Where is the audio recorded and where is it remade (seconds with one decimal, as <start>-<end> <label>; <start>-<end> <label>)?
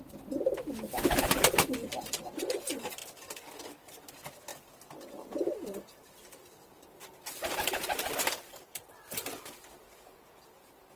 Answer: 0.0-3.0 remade; 3.0-4.1 recorded; 4.1-4.5 remade; 4.5-5.1 recorded; 5.1-11.0 remade